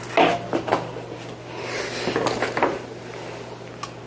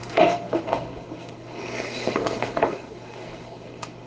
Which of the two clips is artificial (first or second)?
second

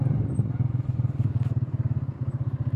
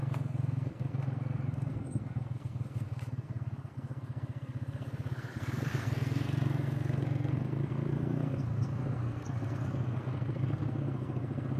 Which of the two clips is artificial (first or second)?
second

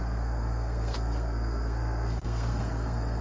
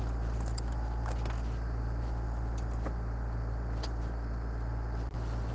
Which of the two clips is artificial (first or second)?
first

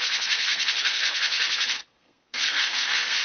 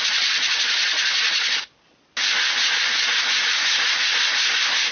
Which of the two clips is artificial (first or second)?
first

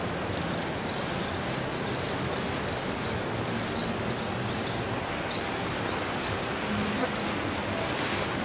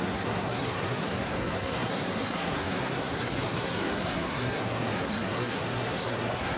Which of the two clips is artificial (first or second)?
second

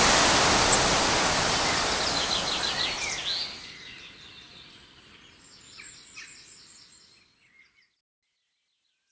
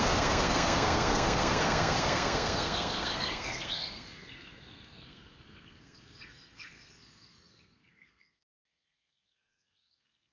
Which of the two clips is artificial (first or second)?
second